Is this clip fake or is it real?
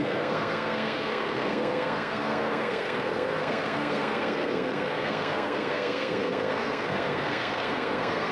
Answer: fake